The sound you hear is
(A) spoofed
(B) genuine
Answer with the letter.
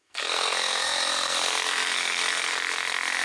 A